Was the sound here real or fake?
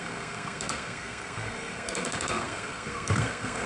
fake